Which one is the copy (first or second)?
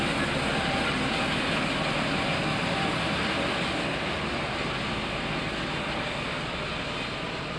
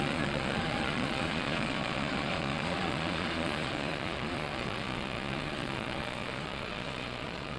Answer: second